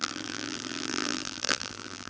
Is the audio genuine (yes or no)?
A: no